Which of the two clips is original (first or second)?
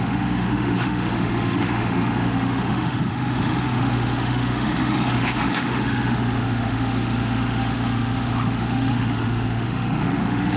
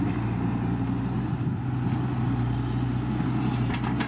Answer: second